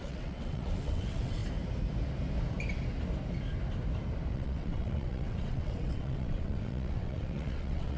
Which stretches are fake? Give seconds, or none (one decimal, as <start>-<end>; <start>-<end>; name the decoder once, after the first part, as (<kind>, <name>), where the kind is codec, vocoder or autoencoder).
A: 0.0-1.4 (vocoder, WaveNeXt); 4.3-8.0